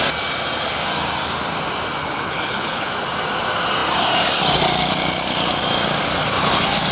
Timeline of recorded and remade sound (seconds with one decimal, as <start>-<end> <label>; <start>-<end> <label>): 0.0-2.0 recorded; 2.0-2.9 remade; 2.9-6.9 recorded